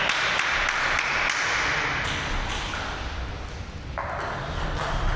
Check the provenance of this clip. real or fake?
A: real